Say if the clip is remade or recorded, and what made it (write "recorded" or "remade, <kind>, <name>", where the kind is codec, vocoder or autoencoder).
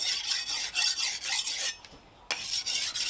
recorded